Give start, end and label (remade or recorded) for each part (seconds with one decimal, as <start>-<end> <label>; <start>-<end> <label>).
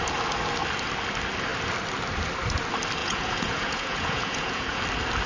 0.0-3.0 recorded; 3.0-4.8 remade; 4.8-5.3 recorded